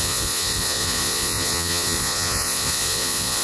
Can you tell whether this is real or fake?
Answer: fake